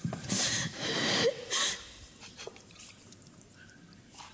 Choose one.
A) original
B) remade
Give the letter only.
B